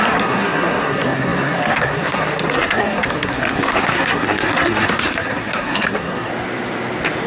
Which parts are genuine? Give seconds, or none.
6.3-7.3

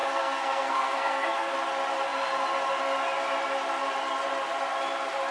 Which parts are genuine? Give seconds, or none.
1.5-5.3

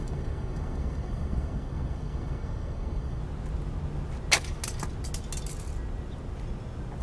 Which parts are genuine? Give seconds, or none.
3.2-7.0